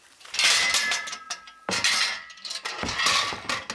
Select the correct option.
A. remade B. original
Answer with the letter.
B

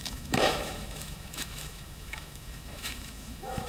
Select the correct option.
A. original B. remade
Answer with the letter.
B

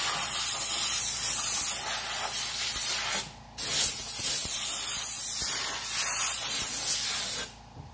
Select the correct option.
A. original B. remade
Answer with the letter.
A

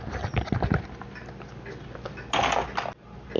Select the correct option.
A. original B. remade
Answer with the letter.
A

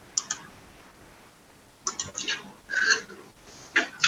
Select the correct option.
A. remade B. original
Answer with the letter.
B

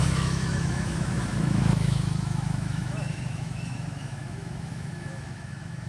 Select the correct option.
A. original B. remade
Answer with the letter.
B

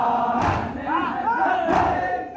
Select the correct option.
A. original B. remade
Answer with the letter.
A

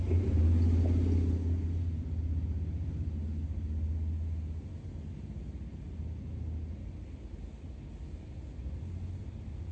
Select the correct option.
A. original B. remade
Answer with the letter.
A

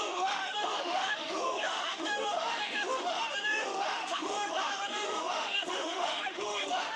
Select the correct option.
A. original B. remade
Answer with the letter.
B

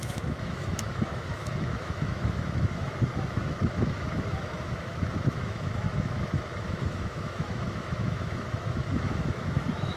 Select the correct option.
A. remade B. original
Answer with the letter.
A